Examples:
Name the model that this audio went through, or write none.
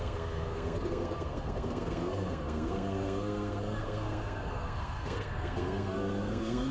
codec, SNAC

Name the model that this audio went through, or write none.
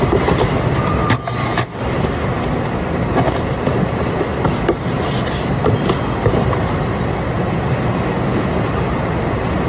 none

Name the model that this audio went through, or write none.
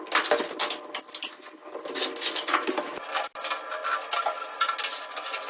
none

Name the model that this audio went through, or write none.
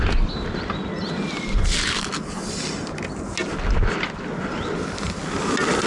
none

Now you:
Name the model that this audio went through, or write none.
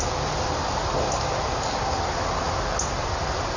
none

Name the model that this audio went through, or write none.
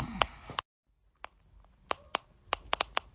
none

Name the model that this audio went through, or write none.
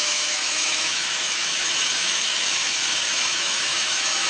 autoencoder, DAC-VAE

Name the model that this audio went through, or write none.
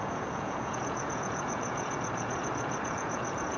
vocoder, Vocos